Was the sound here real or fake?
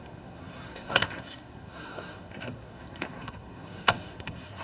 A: fake